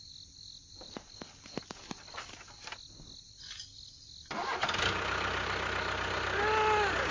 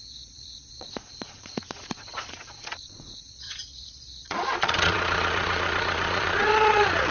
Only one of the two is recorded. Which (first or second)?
first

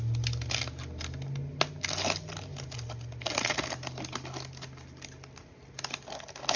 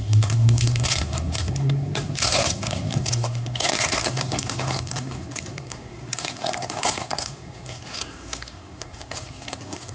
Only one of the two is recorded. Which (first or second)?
first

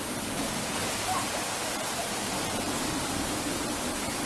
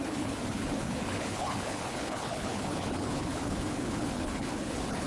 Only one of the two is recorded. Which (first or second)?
first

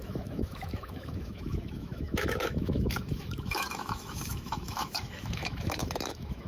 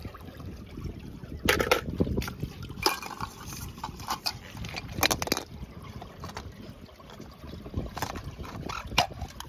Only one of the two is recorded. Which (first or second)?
second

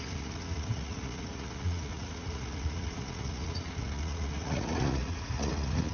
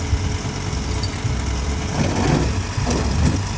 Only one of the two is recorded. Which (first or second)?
second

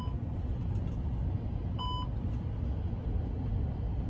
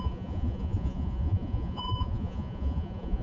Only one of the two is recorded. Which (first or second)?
first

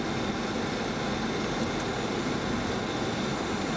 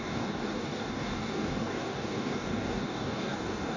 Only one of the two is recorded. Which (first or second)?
first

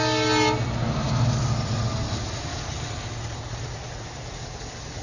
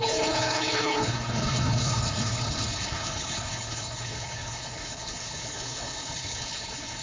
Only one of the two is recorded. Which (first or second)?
first